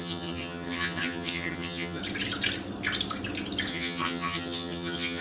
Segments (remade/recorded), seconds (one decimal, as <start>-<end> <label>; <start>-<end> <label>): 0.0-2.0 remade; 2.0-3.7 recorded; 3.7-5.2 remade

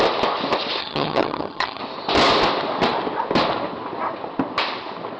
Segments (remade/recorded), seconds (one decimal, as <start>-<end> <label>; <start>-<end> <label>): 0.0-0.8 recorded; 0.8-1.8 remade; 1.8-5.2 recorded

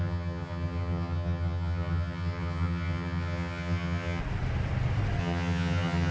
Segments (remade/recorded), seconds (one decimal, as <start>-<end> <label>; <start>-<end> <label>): 0.0-4.2 remade; 4.2-5.2 recorded; 5.2-6.1 remade

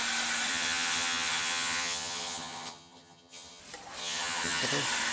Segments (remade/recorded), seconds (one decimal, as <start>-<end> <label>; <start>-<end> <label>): 0.0-0.5 recorded; 0.5-3.6 remade; 3.6-4.0 recorded; 4.0-4.6 remade; 4.6-5.1 recorded